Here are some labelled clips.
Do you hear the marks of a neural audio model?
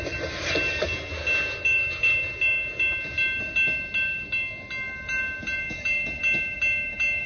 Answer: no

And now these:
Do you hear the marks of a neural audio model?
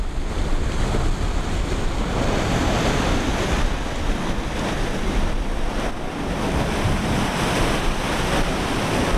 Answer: no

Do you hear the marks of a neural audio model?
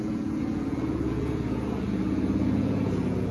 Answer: yes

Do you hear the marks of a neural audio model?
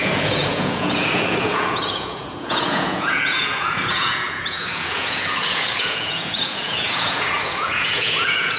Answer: yes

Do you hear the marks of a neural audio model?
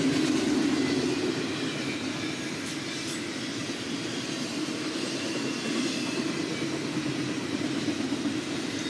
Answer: no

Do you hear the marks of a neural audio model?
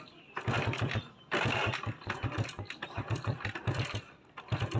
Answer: no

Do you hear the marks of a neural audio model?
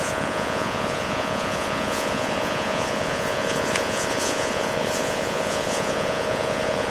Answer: yes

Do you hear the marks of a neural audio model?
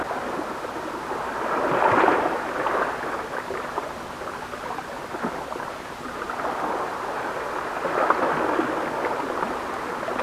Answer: no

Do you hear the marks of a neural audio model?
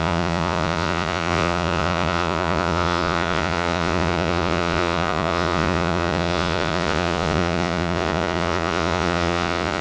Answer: yes